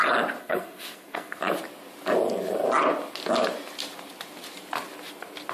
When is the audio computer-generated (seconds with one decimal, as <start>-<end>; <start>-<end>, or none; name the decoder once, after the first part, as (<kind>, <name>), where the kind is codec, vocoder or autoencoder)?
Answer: 0.4-1.4 (codec, SNAC)